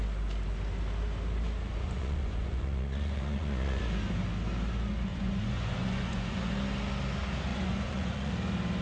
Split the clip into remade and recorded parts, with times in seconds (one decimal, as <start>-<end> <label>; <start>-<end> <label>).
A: 0.0-1.7 recorded; 1.7-3.8 remade; 3.8-5.1 recorded; 5.1-6.5 remade; 6.5-7.5 recorded; 7.5-8.3 remade; 8.3-8.8 recorded